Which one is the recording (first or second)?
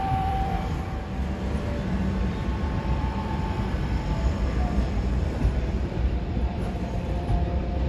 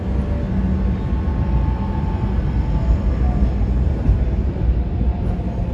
second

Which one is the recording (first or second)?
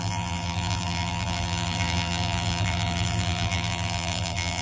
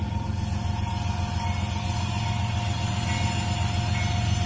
second